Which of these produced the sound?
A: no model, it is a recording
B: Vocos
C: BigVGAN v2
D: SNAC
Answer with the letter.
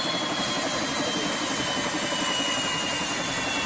A